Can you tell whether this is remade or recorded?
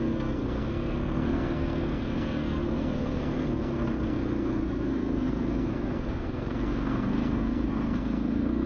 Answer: remade